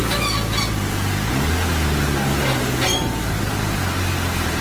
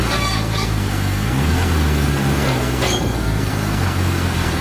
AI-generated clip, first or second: second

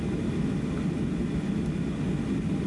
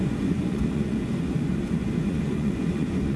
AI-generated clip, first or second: second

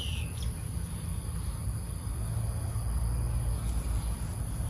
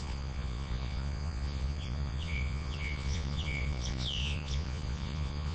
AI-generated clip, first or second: second